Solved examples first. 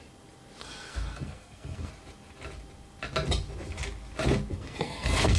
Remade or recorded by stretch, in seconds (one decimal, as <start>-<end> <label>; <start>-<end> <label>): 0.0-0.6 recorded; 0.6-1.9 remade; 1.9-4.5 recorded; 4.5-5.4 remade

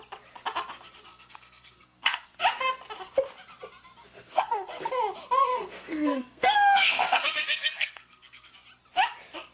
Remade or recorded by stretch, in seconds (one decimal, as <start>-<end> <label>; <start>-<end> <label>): 0.0-1.1 recorded; 1.1-2.4 remade; 2.4-4.0 recorded; 4.0-4.9 remade; 4.9-5.5 recorded; 5.5-8.5 remade; 8.5-9.5 recorded

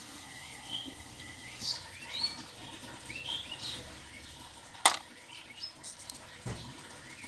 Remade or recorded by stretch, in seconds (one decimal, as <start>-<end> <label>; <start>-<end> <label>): 0.0-1.7 remade; 1.7-7.3 recorded

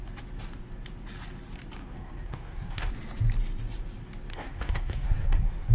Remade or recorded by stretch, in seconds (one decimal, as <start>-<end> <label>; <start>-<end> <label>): 0.0-1.8 recorded; 1.8-2.9 remade; 2.9-4.3 recorded; 4.3-5.7 remade

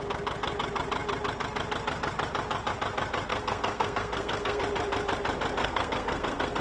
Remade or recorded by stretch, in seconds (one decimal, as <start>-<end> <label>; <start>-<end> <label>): 0.0-3.3 recorded; 3.3-4.6 remade; 4.6-5.6 recorded; 5.6-6.6 remade

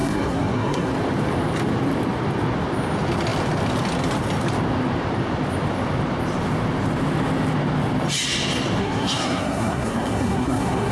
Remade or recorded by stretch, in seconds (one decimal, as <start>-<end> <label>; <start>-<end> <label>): 0.0-0.9 remade; 0.9-8.8 recorded; 8.8-10.9 remade

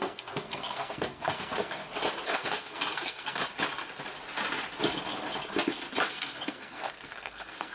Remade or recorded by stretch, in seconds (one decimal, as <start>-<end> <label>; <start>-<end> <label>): 0.0-1.8 remade; 1.8-2.3 recorded; 2.3-3.4 remade; 3.4-6.1 recorded; 6.1-7.7 remade

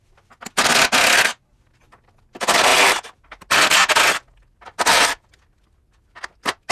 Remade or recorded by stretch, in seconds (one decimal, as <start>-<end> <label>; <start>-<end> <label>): 0.0-6.7 recorded